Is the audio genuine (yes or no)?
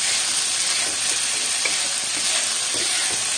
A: yes